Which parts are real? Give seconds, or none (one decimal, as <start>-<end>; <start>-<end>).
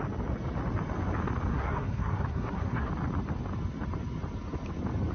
0.0-1.5; 2.9-5.1